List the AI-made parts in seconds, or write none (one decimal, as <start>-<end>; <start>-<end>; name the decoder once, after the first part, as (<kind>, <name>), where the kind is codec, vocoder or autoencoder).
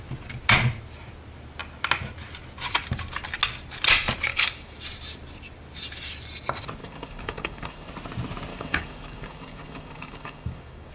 4.3-4.8 (codec, DAC); 6.8-7.9; 8.5-10.9